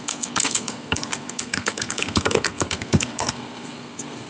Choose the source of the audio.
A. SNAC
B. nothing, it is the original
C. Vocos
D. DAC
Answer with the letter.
A